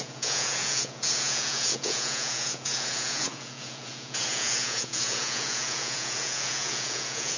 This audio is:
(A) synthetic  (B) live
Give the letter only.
A